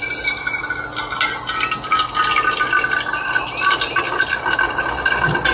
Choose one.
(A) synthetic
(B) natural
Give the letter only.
B